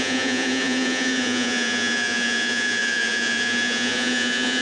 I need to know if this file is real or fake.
fake